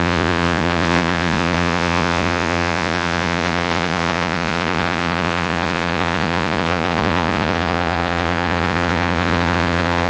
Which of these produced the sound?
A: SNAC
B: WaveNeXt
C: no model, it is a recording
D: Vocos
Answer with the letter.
D